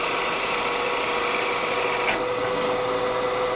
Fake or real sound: real